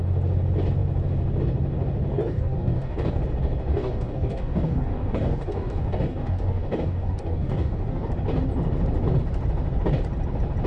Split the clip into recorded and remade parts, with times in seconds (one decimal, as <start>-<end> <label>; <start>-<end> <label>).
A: 0.0-2.1 recorded; 2.1-3.2 remade; 3.2-3.7 recorded; 3.7-8.1 remade; 8.1-10.7 recorded

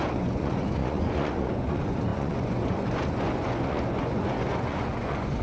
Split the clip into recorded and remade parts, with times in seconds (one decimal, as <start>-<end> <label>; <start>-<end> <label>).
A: 0.0-5.4 remade

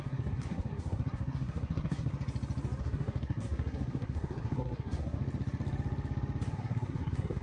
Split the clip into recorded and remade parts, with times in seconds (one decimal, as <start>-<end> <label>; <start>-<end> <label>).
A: 0.0-2.1 remade; 2.1-2.8 recorded; 2.8-5.2 remade; 5.2-6.5 recorded; 6.5-7.4 remade

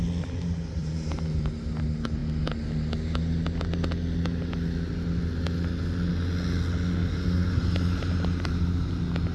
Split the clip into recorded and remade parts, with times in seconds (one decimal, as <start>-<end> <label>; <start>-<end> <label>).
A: 0.0-0.8 recorded; 0.8-1.7 remade; 1.7-7.0 recorded; 7.0-8.9 remade; 8.9-9.3 recorded